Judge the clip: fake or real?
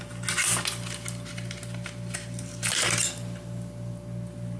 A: real